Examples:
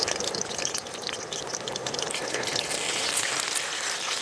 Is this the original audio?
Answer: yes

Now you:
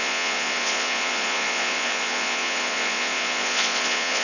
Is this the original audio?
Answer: no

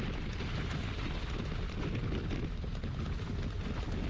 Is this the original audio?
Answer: yes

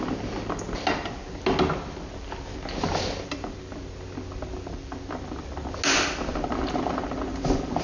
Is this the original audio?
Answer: yes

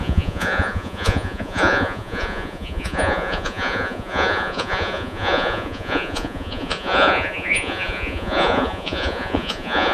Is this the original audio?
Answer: no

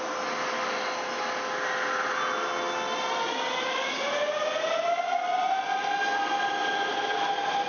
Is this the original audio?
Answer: yes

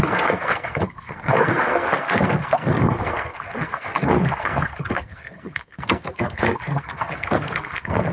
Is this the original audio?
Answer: no